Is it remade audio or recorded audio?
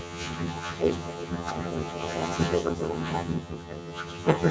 remade